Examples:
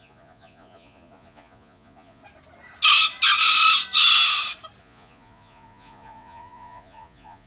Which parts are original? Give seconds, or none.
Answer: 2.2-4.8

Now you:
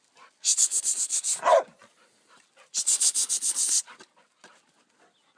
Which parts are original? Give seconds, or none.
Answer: 0.0-5.4

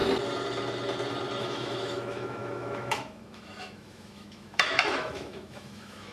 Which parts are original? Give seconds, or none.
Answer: 0.0-1.4

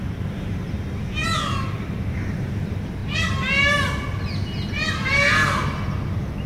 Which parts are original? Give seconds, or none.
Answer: 3.0-6.1

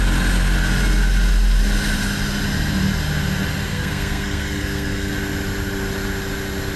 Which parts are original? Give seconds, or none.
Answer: 0.0-3.7; 5.1-6.8

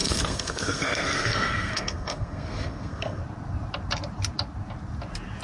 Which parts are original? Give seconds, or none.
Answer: 3.2-5.4